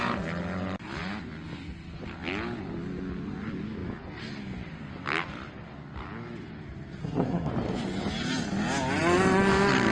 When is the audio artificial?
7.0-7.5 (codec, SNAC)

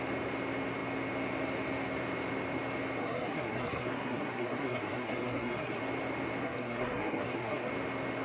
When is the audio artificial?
3.0-5.8 (codec, SNAC); 6.4-7.7

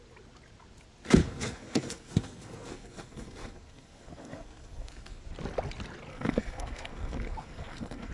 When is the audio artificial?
1.2-5.2 (codec, SNAC); 6.1-8.1